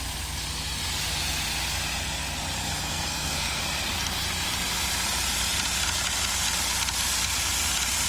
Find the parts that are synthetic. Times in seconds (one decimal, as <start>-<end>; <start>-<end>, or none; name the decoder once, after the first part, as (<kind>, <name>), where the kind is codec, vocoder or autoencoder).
2.6-3.6 (codec, SNAC)